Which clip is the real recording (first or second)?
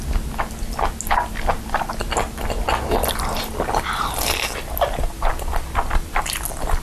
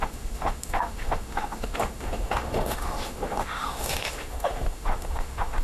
first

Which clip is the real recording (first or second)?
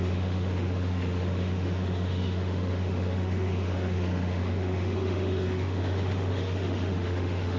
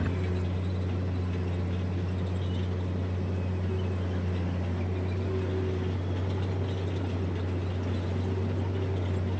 second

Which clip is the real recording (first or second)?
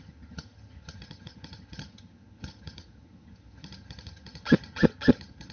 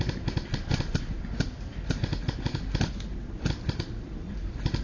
second